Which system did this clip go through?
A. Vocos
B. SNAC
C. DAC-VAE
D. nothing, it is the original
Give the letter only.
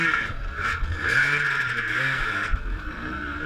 B